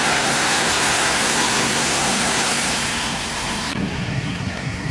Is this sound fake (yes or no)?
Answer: yes